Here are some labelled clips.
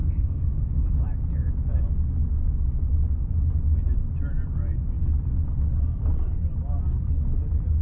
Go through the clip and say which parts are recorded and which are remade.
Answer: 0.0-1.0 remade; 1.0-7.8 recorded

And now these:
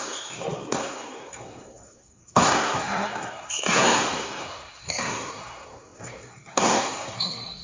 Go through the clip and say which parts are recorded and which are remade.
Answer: 0.0-7.6 remade